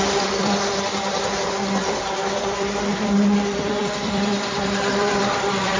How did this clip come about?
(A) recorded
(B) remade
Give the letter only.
B